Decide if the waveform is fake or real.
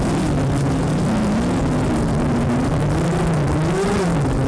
real